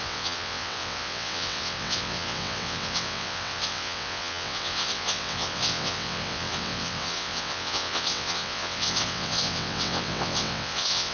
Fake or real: fake